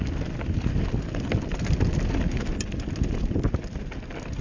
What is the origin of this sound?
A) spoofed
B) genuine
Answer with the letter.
B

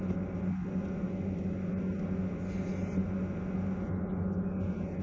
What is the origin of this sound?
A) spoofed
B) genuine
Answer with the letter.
B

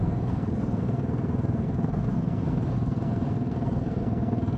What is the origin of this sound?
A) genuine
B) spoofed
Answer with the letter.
B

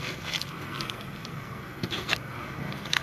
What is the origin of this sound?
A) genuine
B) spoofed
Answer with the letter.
B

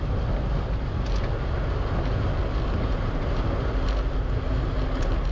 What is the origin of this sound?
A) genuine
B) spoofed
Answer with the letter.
A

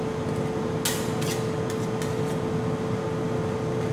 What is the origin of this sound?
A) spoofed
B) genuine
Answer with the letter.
B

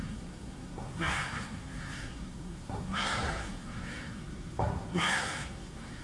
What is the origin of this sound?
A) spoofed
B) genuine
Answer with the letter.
A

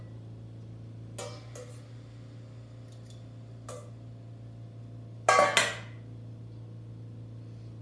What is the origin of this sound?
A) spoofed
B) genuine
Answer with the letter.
B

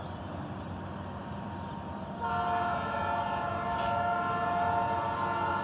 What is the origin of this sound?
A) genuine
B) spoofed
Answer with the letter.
A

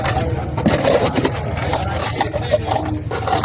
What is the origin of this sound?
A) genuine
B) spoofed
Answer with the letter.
A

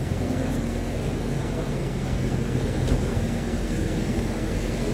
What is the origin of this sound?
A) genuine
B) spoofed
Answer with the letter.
B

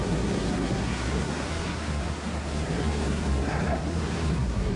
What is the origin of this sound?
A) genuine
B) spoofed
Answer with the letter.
B